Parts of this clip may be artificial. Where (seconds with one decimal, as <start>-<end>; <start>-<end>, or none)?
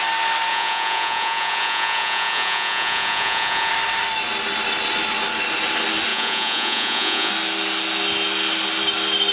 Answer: 0.5-3.7; 6.1-7.3